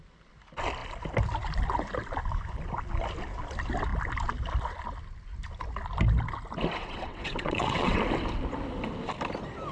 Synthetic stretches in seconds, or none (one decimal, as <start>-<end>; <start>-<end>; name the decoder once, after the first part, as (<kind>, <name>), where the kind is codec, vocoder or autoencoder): 6.8-8.0 (vocoder, WaveNeXt)